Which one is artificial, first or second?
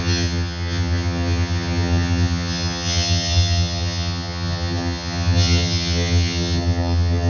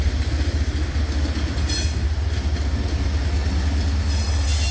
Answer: first